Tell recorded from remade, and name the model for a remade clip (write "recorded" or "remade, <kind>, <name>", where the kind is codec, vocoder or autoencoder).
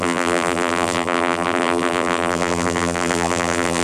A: remade, vocoder, BigVGAN v2